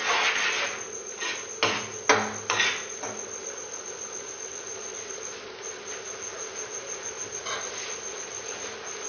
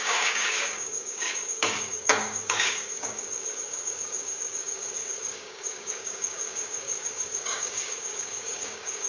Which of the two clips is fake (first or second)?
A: second